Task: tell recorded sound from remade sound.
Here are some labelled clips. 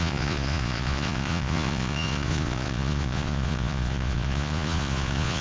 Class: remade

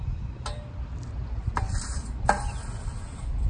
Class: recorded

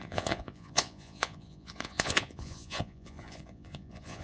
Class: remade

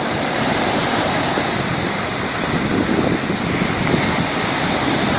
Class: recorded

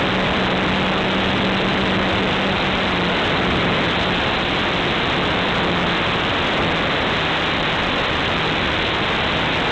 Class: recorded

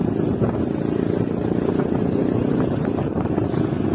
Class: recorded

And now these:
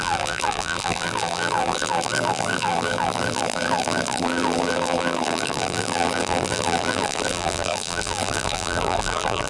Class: remade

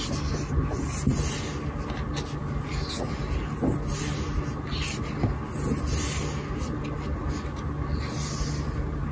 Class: recorded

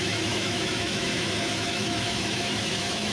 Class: remade